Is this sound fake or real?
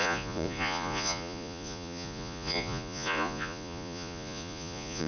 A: fake